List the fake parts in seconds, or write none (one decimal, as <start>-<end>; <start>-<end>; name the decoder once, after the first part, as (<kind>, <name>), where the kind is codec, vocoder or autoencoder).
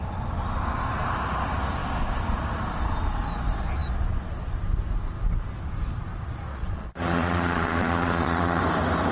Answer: 6.5-8.6 (vocoder, Vocos)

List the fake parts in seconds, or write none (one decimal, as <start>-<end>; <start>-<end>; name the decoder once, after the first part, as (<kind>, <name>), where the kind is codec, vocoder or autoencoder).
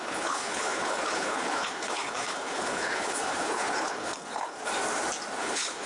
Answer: 0.0-4.7 (codec, HILCodec); 5.4-5.9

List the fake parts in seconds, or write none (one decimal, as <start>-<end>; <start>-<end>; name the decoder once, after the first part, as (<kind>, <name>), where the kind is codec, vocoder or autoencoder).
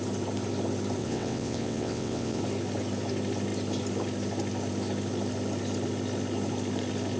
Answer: 1.0-2.4 (vocoder, WaveNeXt)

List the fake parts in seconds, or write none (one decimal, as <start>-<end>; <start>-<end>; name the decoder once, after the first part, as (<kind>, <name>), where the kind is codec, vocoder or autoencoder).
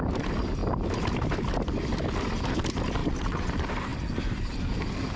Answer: 3.0-3.5 (vocoder, WaveNeXt)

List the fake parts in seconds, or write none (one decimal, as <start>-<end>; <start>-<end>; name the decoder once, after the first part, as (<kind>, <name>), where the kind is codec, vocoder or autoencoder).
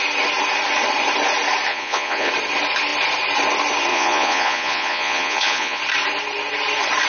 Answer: 1.7-2.3 (vocoder, Vocos); 3.9-5.8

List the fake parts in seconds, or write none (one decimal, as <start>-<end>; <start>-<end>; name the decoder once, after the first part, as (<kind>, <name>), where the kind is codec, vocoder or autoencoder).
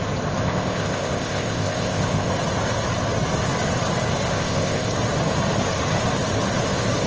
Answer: 0.4-2.3 (codec, ZipCodec); 4.3-4.9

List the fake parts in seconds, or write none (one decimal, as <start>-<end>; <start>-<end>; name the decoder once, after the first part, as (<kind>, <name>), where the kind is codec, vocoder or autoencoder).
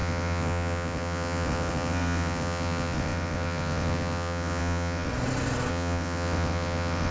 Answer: 0.0-5.1 (vocoder, WaveNeXt); 5.7-7.1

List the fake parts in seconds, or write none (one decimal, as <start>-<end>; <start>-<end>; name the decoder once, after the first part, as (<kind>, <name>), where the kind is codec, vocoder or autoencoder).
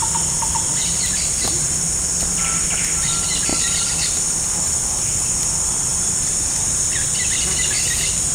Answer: 0.0-1.8 (vocoder, BigVGAN v2); 3.5-4.6